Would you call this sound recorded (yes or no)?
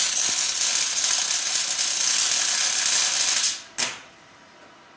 yes